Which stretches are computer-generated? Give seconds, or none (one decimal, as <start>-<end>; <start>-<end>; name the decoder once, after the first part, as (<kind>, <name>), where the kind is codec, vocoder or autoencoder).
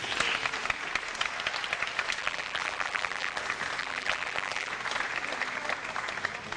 2.2-3.4 (vocoder, BigVGAN v2); 3.8-4.7